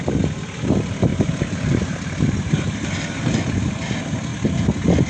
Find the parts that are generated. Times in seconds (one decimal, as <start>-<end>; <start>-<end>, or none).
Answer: 1.1-3.9